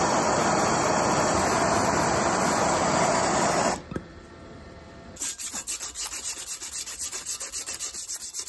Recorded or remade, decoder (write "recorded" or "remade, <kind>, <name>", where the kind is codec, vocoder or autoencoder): remade, vocoder, BigVGAN v2